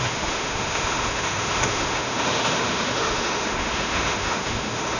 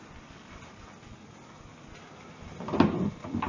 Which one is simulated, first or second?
first